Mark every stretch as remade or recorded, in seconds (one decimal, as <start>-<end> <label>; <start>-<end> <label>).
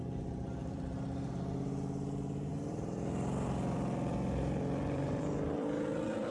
0.0-0.6 recorded; 0.6-1.3 remade; 1.3-2.5 recorded; 2.5-6.3 remade